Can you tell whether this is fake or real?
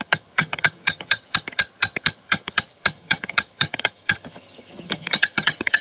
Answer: fake